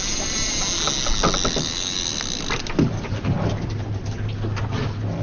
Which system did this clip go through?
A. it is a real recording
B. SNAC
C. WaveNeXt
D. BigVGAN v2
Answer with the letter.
A